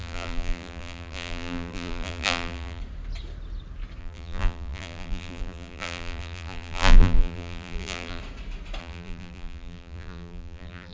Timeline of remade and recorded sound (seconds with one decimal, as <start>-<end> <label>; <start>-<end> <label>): 0.0-2.8 remade; 2.8-4.0 recorded; 4.0-8.2 remade; 8.2-8.8 recorded; 8.8-10.9 remade